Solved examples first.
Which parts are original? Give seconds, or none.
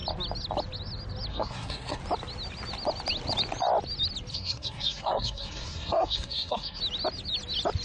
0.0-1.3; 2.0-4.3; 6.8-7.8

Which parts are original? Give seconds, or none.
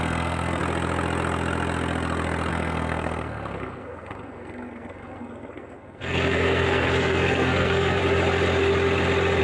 0.6-2.5; 8.0-9.4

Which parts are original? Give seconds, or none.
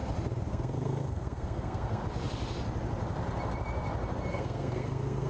0.0-0.5; 2.0-4.3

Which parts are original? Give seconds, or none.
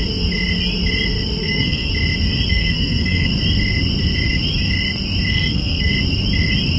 0.0-1.4; 1.9-2.5; 3.3-5.3; 5.9-6.8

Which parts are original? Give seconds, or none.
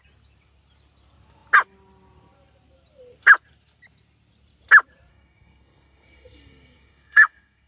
0.0-5.1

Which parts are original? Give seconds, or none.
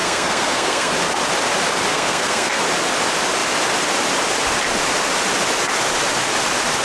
0.9-1.9; 2.6-6.8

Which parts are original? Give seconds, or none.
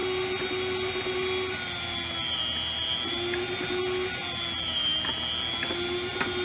0.0-6.4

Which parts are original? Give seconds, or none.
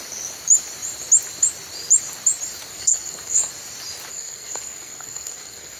0.0-2.7; 3.5-4.1